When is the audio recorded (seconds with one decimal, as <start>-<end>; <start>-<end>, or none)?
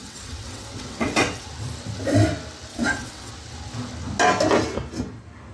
1.5-2.7; 3.3-5.5